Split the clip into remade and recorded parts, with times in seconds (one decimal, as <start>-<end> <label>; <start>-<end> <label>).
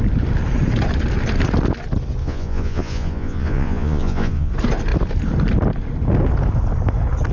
0.0-2.2 recorded; 2.2-4.5 remade; 4.5-7.3 recorded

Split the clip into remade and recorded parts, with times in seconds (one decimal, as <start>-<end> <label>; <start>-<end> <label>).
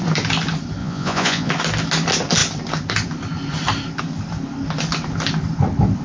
0.0-0.8 recorded; 0.8-1.5 remade; 1.5-6.0 recorded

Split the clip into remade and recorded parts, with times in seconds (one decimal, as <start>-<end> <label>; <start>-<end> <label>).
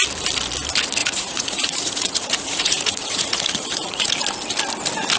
0.0-1.0 recorded; 1.0-4.1 remade; 4.1-5.2 recorded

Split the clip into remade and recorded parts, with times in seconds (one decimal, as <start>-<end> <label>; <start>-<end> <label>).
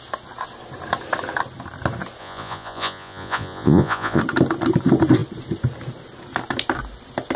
0.0-2.2 recorded; 2.2-4.2 remade; 4.2-7.4 recorded